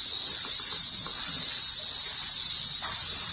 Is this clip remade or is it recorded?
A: recorded